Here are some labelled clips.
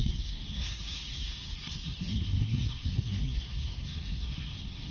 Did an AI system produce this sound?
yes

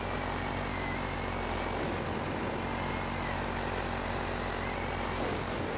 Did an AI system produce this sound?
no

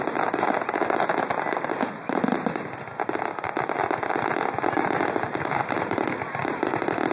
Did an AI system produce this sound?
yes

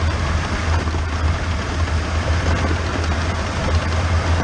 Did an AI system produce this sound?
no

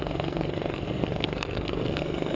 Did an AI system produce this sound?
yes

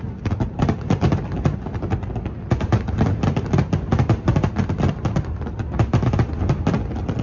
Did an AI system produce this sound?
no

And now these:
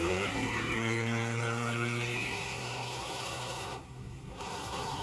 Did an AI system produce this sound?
yes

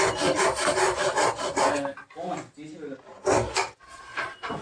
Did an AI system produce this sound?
no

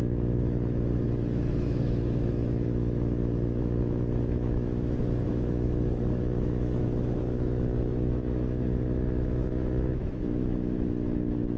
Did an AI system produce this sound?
yes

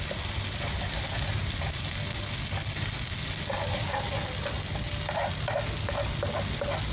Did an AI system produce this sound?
no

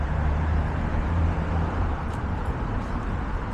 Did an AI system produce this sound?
yes